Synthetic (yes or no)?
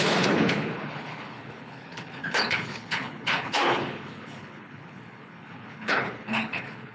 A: yes